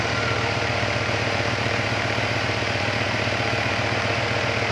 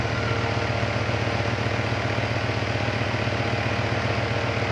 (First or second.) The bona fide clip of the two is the second